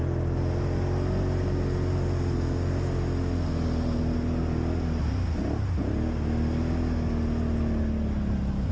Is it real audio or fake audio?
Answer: real